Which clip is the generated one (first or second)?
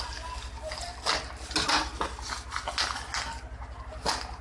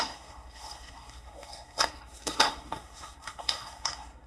second